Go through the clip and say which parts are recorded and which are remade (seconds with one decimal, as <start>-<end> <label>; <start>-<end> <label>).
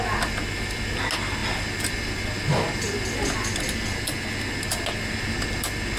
0.0-6.0 recorded